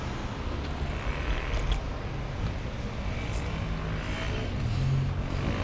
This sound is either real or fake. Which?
real